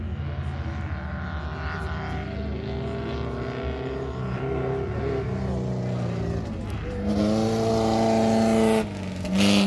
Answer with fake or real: real